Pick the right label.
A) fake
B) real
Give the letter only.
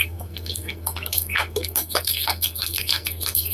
A